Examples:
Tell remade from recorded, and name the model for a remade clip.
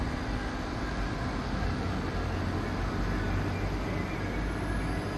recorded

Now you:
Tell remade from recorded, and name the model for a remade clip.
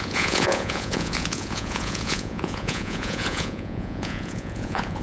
remade, vocoder, Vocos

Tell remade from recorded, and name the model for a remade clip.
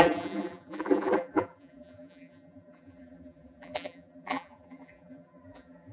remade, vocoder, BigVGAN v2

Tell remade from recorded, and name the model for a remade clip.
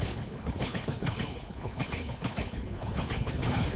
remade, codec, HILCodec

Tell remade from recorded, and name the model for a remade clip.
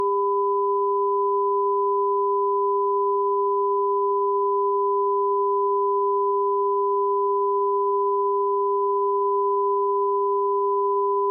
recorded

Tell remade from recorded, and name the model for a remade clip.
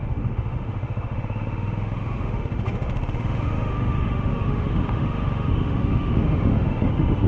remade, autoencoder, DAC-VAE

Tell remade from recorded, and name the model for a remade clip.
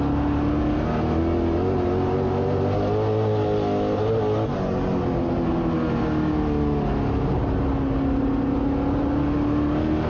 recorded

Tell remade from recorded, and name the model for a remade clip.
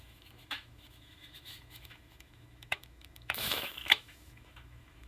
remade, autoencoder, DAC-VAE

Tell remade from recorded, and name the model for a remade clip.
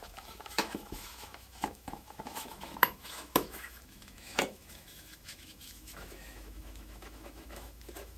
remade, autoencoder, DAC-VAE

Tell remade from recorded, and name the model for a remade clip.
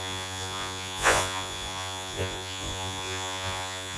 remade, vocoder, Vocos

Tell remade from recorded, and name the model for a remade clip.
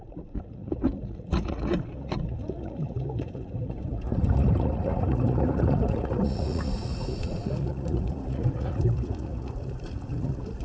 remade, vocoder, Vocos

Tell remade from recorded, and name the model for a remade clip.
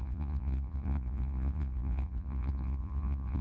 remade, vocoder, Vocos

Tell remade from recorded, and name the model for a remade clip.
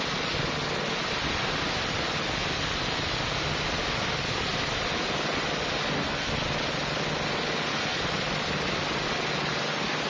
recorded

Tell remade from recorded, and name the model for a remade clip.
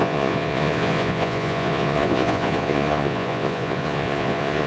remade, vocoder, Vocos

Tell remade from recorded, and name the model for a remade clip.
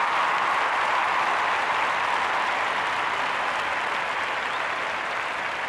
recorded